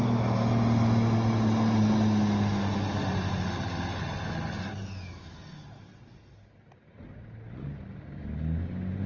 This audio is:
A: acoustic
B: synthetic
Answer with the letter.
A